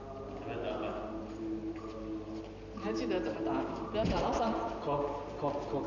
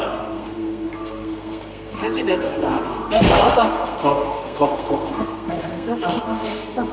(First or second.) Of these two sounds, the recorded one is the first